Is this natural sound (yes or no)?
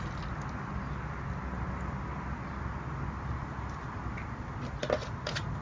yes